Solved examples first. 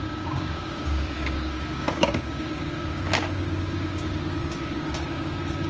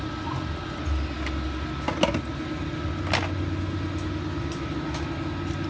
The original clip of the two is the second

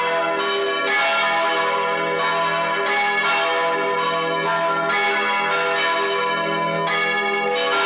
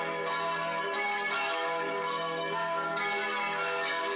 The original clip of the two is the first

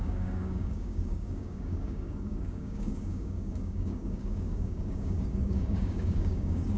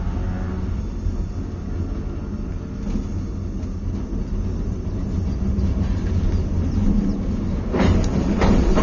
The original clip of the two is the second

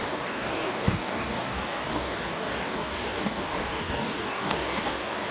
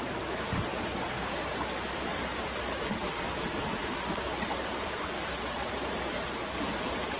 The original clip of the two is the second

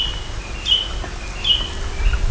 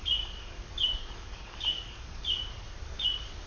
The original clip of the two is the first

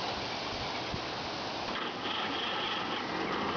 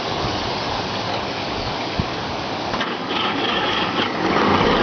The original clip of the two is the first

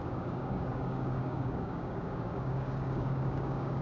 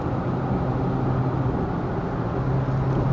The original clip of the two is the second